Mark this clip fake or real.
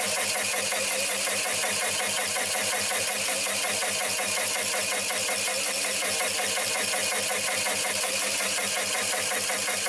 real